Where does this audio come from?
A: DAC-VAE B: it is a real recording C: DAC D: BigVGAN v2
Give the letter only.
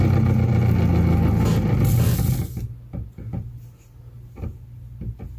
B